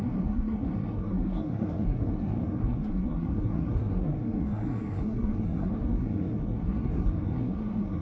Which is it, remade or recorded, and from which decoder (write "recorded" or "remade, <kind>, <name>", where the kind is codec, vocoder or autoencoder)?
remade, codec, SNAC